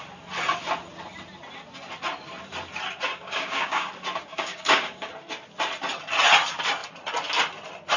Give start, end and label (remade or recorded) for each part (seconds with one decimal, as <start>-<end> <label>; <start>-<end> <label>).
0.0-3.1 recorded; 3.1-3.9 remade; 3.9-4.3 recorded; 4.3-5.1 remade; 5.1-8.0 recorded